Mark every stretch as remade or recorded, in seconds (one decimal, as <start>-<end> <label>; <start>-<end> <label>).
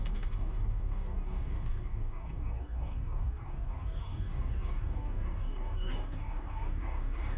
0.0-7.4 remade